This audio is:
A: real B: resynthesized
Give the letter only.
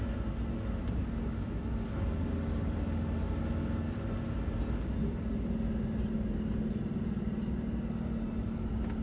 A